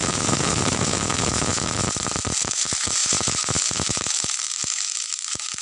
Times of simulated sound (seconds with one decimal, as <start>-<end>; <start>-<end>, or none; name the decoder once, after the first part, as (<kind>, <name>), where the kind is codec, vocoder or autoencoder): 0.0-1.8 (autoencoder, DAC-VAE); 2.4-5.6